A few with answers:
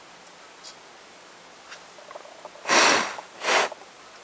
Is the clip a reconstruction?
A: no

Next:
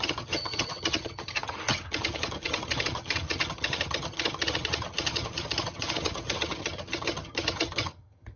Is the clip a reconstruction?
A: yes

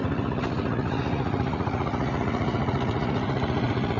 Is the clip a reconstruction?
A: yes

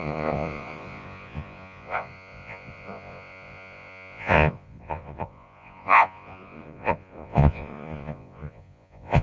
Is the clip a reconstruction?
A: yes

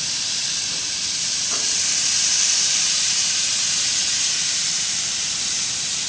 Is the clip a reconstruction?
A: no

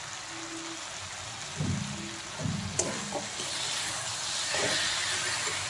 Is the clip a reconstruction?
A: no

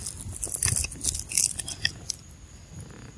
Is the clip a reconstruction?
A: no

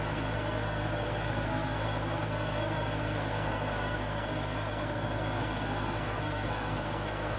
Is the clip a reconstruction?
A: yes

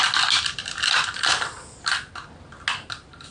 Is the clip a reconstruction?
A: no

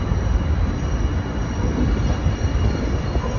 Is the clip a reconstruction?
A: no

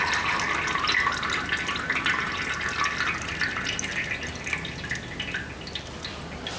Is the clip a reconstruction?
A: no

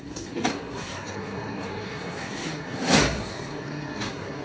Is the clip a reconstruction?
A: yes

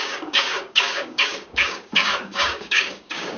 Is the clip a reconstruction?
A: yes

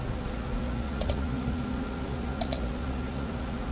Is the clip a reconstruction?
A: yes